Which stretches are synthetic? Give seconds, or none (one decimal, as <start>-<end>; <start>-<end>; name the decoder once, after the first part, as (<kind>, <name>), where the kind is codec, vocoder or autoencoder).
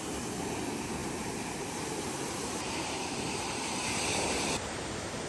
1.0-4.2 (vocoder, BigVGAN v2)